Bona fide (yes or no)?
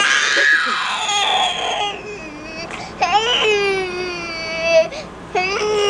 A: yes